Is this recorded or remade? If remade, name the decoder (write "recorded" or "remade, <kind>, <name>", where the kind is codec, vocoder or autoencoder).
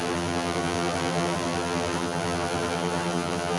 remade, vocoder, BigVGAN v2